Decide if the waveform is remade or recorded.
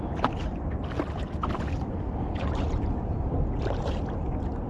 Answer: recorded